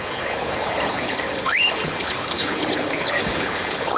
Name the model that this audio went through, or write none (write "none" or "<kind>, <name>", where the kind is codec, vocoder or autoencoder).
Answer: codec, HILCodec